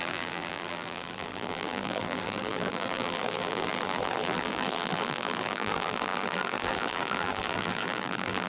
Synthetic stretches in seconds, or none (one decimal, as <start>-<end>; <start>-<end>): 0.0-8.5